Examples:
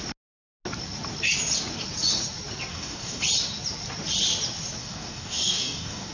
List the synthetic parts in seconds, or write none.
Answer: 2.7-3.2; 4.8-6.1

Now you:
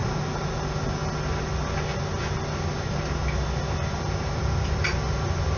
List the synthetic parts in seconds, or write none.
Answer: none

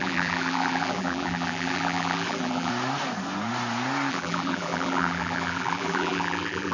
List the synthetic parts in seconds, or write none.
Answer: 0.0-2.7; 4.1-6.7

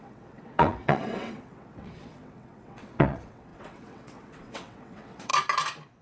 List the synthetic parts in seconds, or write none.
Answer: 0.0-5.3

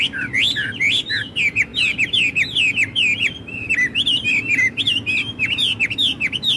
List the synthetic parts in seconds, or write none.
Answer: none

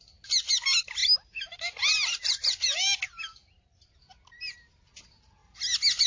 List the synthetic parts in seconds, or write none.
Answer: none